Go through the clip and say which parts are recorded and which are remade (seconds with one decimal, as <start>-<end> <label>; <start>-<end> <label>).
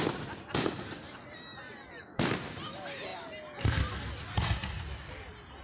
0.0-5.6 recorded